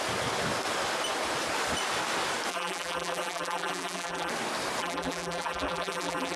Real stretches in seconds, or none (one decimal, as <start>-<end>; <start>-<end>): 0.0-2.5; 4.3-4.8